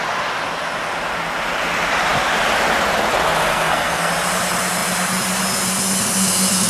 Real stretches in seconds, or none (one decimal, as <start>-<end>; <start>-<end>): 0.0-3.5; 4.1-6.7